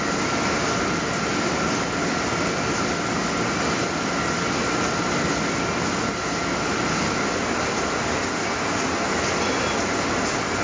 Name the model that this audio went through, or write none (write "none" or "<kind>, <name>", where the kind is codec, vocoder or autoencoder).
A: none